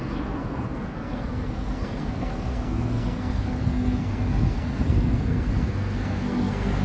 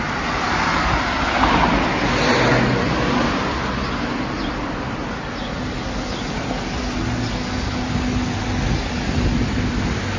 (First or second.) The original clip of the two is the second